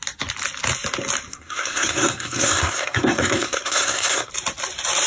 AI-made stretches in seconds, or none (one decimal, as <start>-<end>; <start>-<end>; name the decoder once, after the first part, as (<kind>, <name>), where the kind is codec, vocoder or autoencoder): 1.3-4.3 (codec, SNAC)